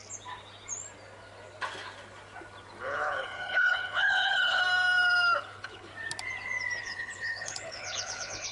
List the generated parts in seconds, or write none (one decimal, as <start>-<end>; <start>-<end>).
2.8-4.6; 5.4-5.9; 6.8-8.5